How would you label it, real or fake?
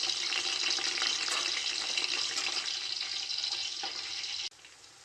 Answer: real